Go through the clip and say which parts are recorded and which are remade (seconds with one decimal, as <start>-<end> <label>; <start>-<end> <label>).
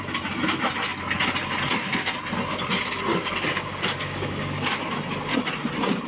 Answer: 0.0-3.1 recorded; 3.1-4.9 remade; 4.9-6.1 recorded